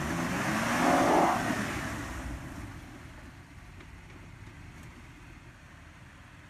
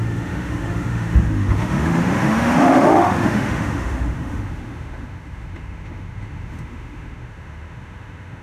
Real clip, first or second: first